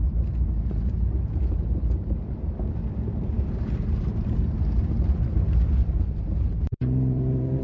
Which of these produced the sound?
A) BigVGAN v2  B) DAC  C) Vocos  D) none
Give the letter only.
A